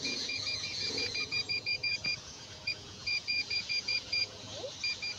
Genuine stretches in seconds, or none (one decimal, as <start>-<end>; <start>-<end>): 4.5-5.2